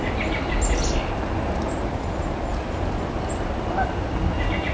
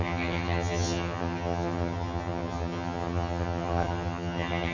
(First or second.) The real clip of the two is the first